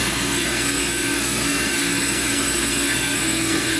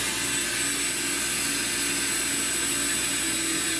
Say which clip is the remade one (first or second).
first